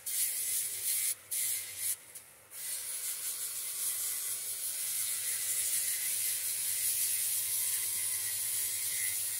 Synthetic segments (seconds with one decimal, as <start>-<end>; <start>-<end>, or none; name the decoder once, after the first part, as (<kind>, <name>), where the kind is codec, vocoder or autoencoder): none